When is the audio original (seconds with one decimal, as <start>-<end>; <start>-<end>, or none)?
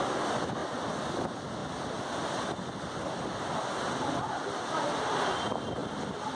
0.0-6.4